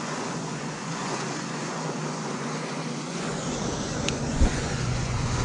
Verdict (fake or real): fake